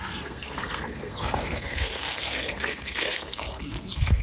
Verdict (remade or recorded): remade